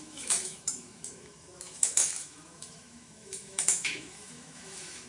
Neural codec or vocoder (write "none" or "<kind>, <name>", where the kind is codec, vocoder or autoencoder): autoencoder, DAC-VAE